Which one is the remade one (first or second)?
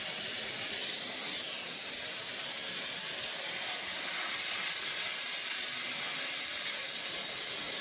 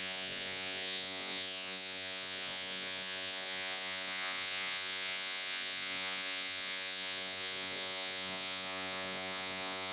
second